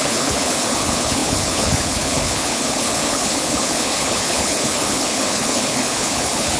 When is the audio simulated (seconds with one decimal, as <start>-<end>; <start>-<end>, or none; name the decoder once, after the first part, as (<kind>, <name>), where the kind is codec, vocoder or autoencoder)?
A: 0.0-6.6 (codec, HILCodec)